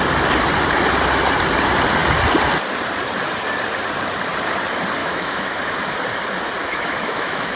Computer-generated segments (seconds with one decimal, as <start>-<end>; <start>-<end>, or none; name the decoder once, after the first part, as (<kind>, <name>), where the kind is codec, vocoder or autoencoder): 5.0-5.6 (autoencoder, DAC-VAE); 6.6-7.6